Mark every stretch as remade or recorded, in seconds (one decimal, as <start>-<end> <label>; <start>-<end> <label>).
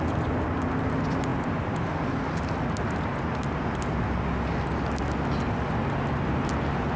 0.0-7.0 recorded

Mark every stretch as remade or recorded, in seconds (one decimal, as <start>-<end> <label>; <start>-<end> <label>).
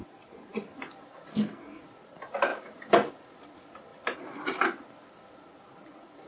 0.0-1.3 recorded; 1.3-1.8 remade; 1.8-6.3 recorded